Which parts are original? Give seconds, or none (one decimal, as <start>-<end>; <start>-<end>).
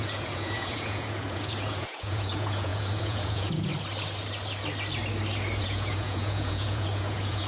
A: 3.7-5.6